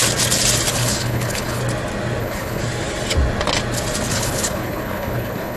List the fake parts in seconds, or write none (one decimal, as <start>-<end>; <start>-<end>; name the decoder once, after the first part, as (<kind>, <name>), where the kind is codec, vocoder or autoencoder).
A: 0.7-1.6 (codec, HILCodec); 2.2-2.6; 4.1-5.6